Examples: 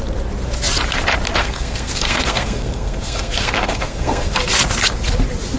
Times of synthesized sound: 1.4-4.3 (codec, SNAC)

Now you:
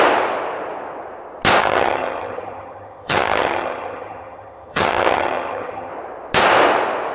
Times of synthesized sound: 1.6-5.9 (vocoder, HiFi-GAN)

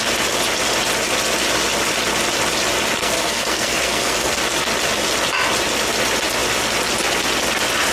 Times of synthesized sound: 3.0-4.4 (codec, SNAC)

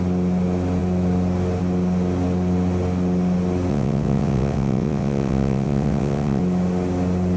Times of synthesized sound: 3.7-6.4 (vocoder, WaveNeXt)

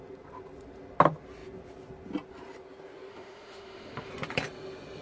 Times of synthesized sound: 3.1-4.1 (autoencoder, DAC-VAE)

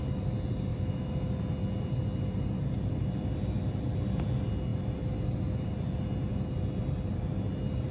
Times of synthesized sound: 0.7-1.3 (autoencoder, DAC-VAE)